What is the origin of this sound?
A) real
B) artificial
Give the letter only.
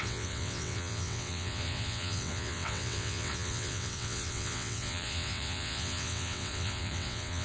B